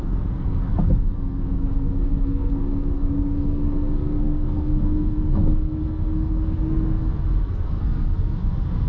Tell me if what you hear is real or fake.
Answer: fake